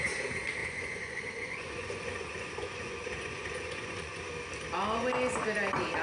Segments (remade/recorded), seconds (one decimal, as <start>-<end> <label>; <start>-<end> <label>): 0.0-0.6 recorded; 0.6-4.2 remade; 4.2-6.0 recorded